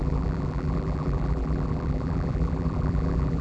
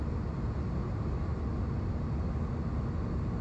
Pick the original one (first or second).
second